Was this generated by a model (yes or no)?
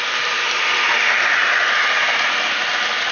no